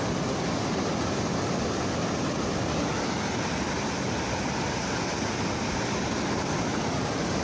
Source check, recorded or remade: recorded